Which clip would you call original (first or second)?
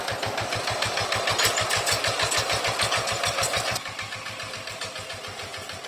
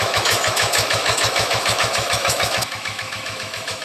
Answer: first